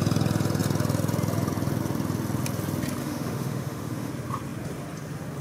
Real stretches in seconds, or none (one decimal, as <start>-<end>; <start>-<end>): 0.0-3.0; 4.1-5.4